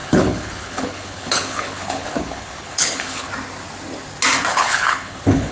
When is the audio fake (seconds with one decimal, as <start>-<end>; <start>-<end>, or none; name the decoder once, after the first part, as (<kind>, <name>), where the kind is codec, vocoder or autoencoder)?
0.0-3.3 (codec, HILCodec); 4.5-5.5